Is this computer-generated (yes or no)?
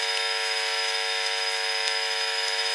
yes